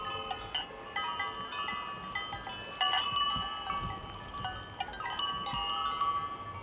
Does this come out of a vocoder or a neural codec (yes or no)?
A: no